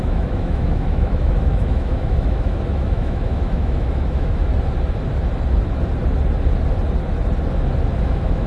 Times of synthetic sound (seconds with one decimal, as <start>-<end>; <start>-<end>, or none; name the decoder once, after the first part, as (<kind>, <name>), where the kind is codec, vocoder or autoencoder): 0.0-4.5 (autoencoder, DAC-VAE); 8.0-8.5